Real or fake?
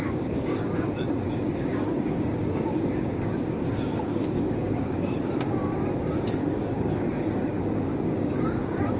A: fake